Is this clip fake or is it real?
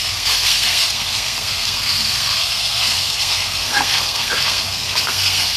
fake